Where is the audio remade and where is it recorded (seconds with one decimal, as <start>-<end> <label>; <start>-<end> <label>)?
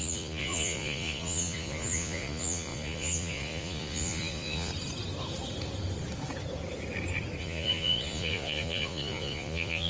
0.0-4.7 remade; 4.7-7.4 recorded; 7.4-9.9 remade